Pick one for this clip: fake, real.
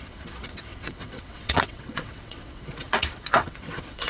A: fake